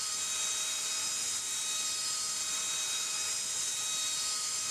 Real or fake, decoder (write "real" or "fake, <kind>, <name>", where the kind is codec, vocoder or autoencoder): fake, vocoder, BigVGAN v2